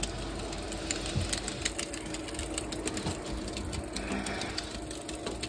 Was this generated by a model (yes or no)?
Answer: no